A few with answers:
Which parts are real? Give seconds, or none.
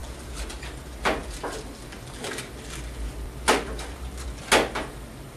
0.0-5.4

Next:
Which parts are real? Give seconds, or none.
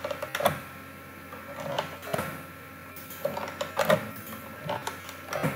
0.0-5.6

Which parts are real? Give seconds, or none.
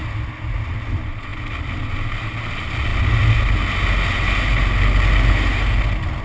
0.0-6.2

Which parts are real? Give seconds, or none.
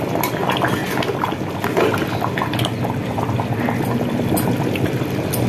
0.0-5.5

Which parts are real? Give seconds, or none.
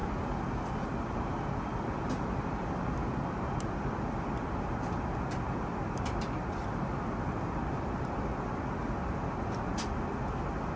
0.0-10.8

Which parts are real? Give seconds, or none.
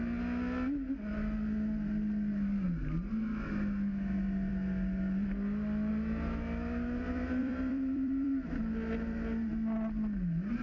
0.0-7.4; 8.5-10.6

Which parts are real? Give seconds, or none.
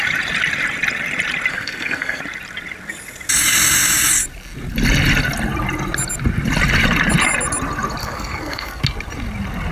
0.0-1.5; 2.2-8.0; 8.8-9.7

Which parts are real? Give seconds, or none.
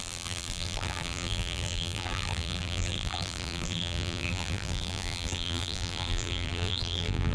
none